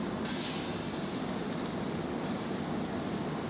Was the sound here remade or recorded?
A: recorded